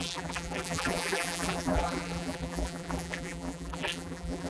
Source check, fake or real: fake